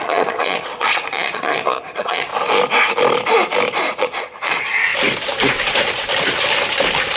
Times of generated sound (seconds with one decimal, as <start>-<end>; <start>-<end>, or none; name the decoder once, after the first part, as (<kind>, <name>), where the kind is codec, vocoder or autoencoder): 0.0-2.3 (vocoder, Vocos); 4.0-4.9